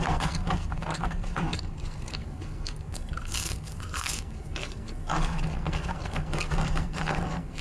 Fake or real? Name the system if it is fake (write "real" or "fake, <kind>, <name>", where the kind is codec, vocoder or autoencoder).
fake, codec, SNAC